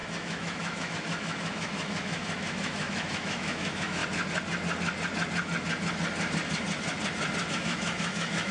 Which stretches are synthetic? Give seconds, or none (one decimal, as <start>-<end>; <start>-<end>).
0.0-4.0; 7.5-8.5